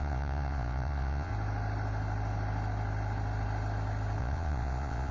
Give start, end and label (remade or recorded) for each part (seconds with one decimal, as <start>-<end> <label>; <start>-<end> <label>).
0.0-1.3 remade; 1.3-4.2 recorded; 4.2-5.1 remade